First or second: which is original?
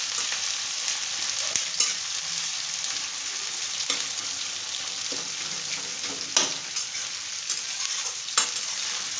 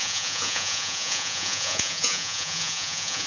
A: first